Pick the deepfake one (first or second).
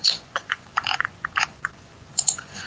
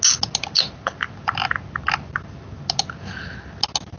first